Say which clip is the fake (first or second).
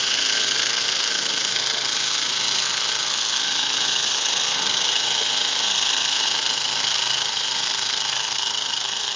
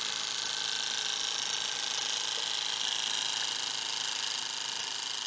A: first